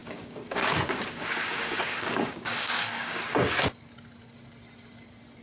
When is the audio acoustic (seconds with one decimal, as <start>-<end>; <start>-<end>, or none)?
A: 3.2-5.4